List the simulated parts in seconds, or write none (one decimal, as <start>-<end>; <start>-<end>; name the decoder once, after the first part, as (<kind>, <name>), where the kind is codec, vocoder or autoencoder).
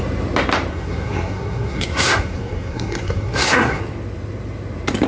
0.7-3.8 (codec, SNAC)